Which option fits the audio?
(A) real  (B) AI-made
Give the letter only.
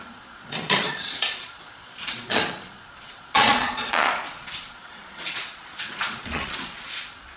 B